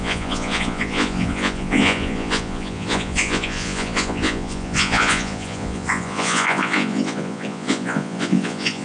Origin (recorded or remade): remade